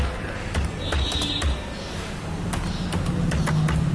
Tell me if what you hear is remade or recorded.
recorded